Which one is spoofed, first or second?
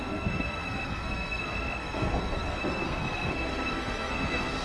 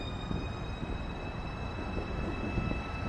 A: first